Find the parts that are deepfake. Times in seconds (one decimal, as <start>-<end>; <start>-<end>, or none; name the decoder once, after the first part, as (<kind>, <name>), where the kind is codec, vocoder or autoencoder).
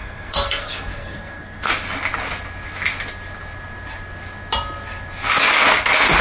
0.0-1.7 (codec, SNAC)